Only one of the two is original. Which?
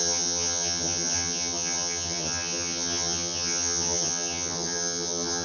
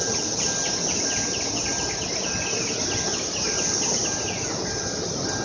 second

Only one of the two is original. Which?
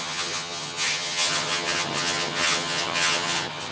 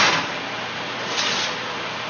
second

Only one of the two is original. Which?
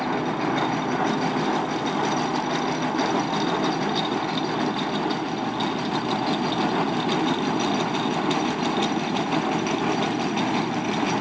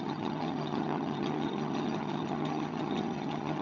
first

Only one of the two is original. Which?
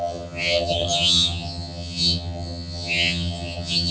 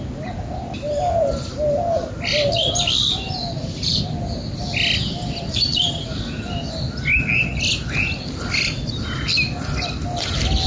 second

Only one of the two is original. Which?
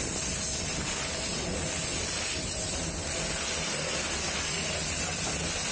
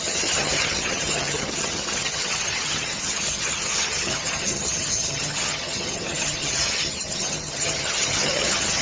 first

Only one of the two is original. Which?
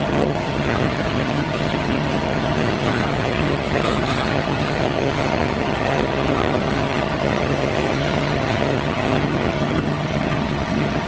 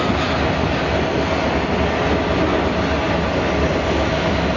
second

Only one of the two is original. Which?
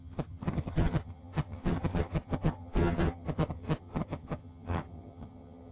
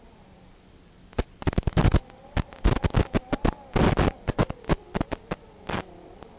second